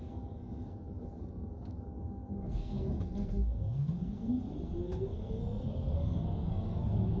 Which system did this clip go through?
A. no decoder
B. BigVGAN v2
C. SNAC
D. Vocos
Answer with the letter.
C